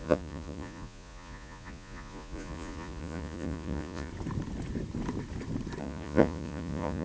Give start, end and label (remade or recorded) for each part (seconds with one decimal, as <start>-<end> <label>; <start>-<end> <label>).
0.0-4.1 remade; 4.1-5.8 recorded; 5.8-7.0 remade